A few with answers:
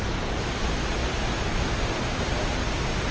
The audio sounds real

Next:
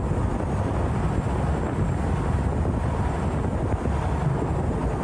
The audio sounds real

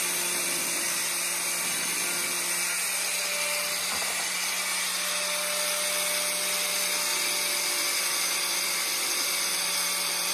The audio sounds real